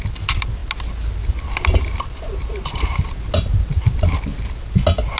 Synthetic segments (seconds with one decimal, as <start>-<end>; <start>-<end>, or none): none